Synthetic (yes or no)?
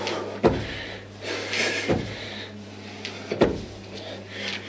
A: no